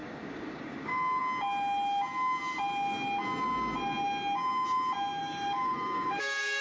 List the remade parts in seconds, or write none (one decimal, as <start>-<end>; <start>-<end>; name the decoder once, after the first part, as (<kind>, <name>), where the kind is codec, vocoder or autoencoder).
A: 0.0-1.2 (codec, DAC); 5.2-6.6